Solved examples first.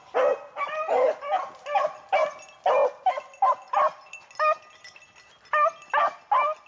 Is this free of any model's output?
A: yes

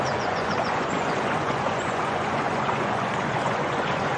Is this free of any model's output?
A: no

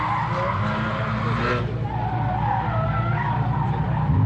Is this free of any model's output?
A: yes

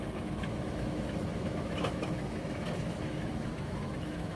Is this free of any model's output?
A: no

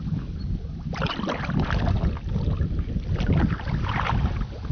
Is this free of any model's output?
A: yes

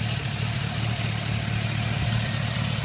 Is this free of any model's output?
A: yes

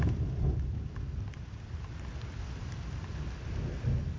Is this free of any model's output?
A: yes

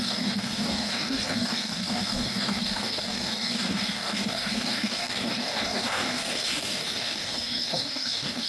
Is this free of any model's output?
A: no